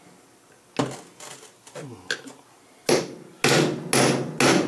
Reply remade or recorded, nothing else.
recorded